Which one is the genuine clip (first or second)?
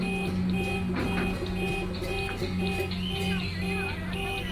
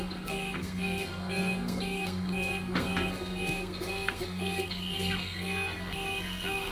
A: first